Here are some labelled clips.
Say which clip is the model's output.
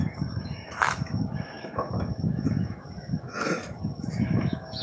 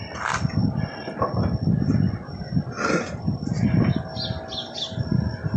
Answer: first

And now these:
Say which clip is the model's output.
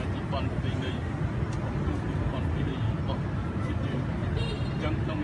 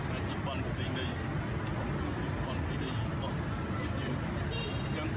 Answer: first